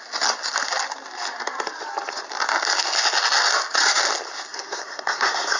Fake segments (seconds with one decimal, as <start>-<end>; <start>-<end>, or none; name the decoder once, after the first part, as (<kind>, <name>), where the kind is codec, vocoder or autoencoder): 4.5-5.6 (codec, SNAC)